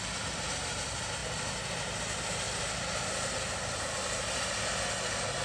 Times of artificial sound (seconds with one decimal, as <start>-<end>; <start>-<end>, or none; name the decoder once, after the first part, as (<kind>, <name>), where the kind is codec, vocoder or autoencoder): none